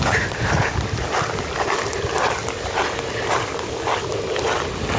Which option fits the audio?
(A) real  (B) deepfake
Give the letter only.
A